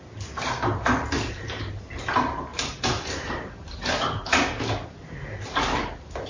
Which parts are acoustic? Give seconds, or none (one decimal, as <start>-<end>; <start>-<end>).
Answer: 0.0-6.3